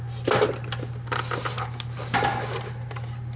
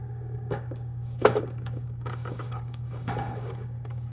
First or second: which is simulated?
second